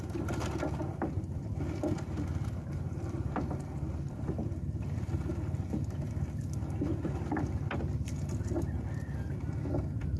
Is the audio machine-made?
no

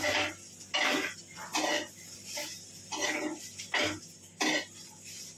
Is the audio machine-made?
no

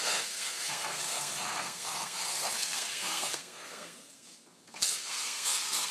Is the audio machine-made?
yes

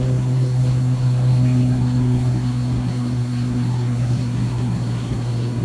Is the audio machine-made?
yes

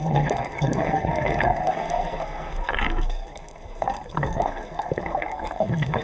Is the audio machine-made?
yes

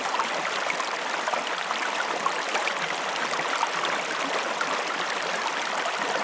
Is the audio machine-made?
no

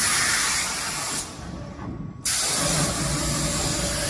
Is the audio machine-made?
no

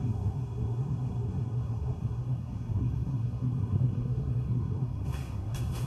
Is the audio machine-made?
yes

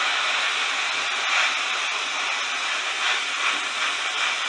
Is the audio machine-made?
no